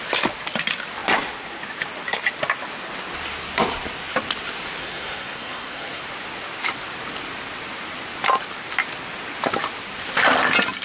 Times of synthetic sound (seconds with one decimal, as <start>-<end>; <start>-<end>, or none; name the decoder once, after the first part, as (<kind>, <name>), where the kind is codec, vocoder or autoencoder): 4.8-6.0 (codec, SNAC)